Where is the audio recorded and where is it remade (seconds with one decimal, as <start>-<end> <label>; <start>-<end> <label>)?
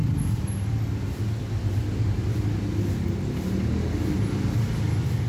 0.0-5.3 recorded